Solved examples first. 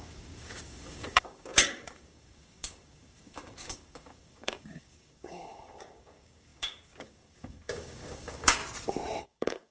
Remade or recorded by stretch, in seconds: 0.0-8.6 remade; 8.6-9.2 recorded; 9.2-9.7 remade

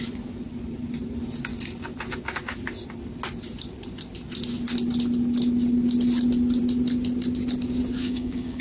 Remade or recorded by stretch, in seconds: 0.0-8.0 recorded; 8.0-8.6 remade

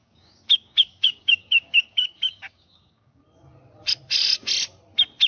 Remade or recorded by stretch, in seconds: 0.0-3.2 remade; 3.2-5.3 recorded

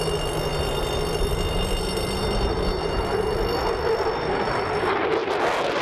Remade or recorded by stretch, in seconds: 0.0-5.8 recorded

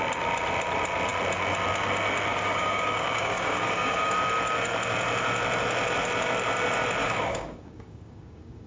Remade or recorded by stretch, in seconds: 0.0-2.3 recorded; 2.3-4.1 remade; 4.1-7.0 recorded; 7.0-8.7 remade

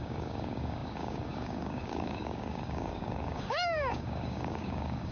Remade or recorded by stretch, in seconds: 0.0-5.1 remade